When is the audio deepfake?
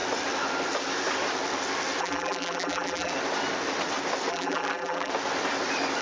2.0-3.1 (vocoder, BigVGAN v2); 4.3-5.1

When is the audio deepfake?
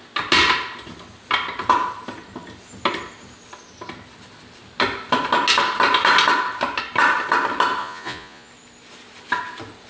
7.8-8.5 (vocoder, Vocos)